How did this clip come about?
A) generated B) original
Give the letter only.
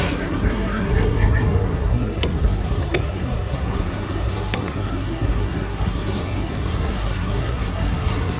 A